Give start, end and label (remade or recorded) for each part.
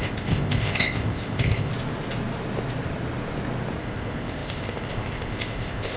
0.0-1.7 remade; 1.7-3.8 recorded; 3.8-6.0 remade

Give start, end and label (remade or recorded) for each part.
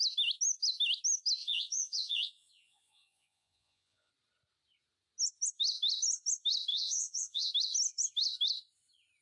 0.0-1.4 recorded; 1.4-4.1 remade; 4.1-6.7 recorded; 6.7-7.5 remade; 7.5-9.2 recorded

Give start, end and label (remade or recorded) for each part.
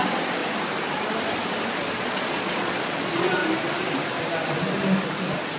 0.0-0.4 remade; 0.4-1.7 recorded; 1.7-3.4 remade; 3.4-5.6 recorded